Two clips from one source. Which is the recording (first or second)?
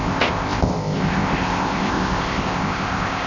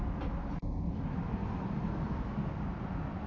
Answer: second